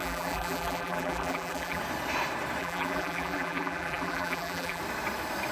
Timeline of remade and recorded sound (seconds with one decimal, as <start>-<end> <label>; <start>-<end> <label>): 0.0-1.8 remade; 1.8-2.6 recorded; 2.6-4.8 remade; 4.8-5.5 recorded